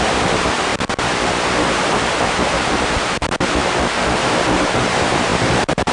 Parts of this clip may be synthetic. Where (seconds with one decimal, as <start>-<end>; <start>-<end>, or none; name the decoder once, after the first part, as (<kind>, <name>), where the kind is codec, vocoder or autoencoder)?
0.0-0.7 (vocoder, BigVGAN v2); 1.8-5.9